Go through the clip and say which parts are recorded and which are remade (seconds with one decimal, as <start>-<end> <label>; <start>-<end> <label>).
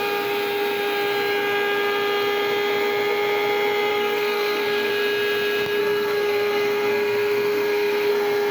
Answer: 0.0-3.9 recorded; 3.9-4.9 remade; 4.9-5.8 recorded; 5.8-8.1 remade; 8.1-8.5 recorded